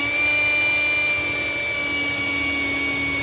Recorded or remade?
recorded